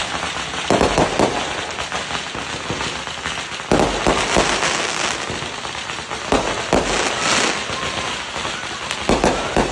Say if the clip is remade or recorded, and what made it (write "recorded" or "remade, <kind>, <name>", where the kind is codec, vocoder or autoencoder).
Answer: recorded